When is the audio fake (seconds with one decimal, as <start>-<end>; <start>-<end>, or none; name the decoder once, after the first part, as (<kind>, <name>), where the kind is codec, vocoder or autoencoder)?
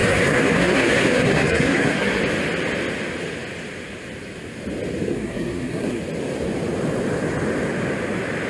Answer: 0.0-2.2 (codec, SNAC); 5.1-6.0